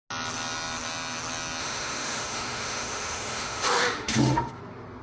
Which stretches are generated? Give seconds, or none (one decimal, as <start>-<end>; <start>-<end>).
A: 1.6-4.6